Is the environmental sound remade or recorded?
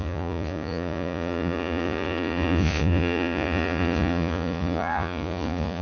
remade